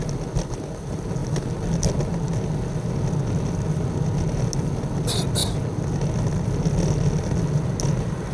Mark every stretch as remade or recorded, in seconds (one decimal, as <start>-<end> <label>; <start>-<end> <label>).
0.0-8.3 recorded

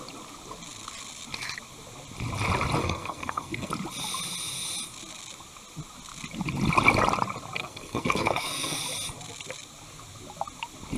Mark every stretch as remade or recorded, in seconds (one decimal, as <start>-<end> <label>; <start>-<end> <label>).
0.0-2.8 recorded; 2.8-3.7 remade; 3.7-7.6 recorded; 7.6-8.8 remade; 8.8-11.0 recorded

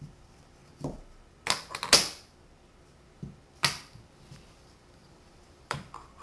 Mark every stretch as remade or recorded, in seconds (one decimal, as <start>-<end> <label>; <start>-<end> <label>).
0.0-0.6 remade; 0.6-4.3 recorded; 4.3-6.2 remade

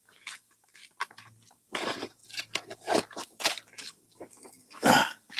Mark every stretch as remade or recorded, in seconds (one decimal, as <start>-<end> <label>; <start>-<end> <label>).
0.0-0.8 remade; 0.8-1.5 recorded; 1.5-5.4 remade

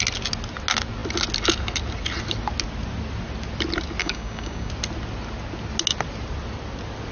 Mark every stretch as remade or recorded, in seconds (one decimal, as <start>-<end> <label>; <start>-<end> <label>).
0.0-4.0 recorded; 4.0-4.7 remade; 4.7-7.1 recorded